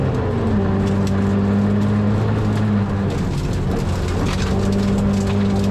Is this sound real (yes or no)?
yes